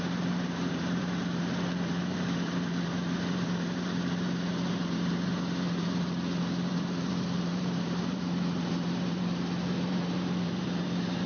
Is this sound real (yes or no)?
no